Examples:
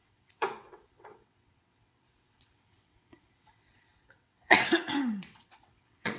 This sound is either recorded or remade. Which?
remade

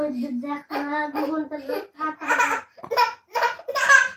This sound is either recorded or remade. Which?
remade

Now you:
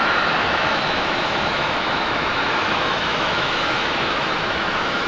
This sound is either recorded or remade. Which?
remade